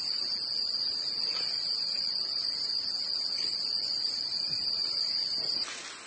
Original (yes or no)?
yes